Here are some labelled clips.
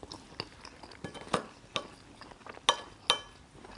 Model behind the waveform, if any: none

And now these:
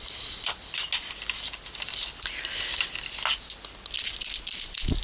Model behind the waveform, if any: none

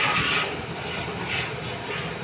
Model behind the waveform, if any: none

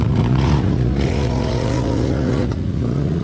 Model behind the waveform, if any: vocoder, Vocos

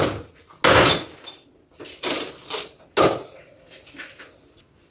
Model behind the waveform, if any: none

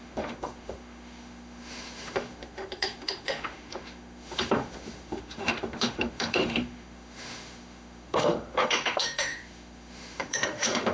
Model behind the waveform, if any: autoencoder, DAC-VAE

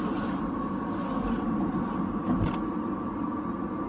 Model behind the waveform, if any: none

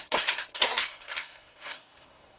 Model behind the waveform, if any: codec, SNAC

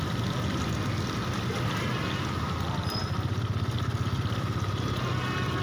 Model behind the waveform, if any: none